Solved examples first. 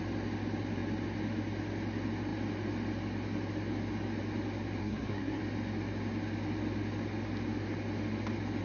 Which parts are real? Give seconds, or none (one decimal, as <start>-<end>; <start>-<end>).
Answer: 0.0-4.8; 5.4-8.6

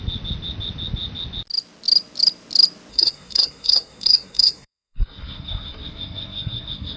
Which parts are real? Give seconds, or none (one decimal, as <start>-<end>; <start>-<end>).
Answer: 0.0-2.9

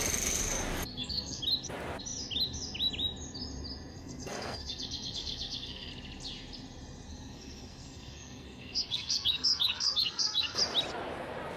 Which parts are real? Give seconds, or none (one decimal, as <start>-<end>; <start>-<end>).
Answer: 0.0-0.9; 1.4-3.9; 5.9-7.1; 10.6-11.6

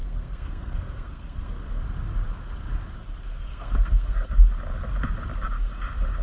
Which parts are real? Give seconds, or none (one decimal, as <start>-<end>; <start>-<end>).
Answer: 1.8-3.3; 4.3-6.2

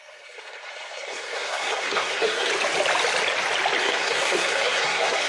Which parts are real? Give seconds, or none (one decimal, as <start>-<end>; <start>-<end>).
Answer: 2.5-3.8